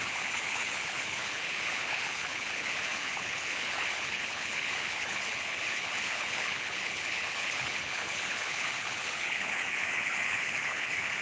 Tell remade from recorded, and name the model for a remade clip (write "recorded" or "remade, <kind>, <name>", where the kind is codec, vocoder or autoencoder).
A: remade, codec, HILCodec